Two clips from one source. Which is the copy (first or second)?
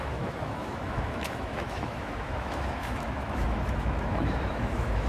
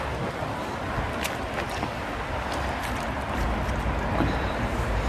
first